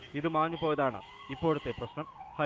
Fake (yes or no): yes